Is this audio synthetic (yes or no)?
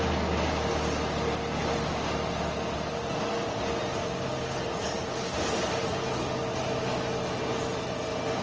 no